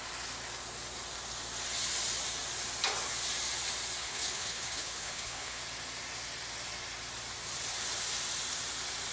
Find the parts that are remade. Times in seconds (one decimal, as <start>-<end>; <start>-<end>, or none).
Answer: 4.0-5.6